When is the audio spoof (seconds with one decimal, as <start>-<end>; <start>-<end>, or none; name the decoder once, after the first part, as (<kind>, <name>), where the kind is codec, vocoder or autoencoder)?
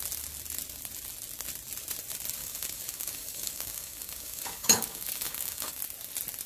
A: 2.4-5.8 (codec, DAC)